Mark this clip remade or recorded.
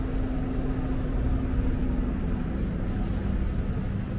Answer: recorded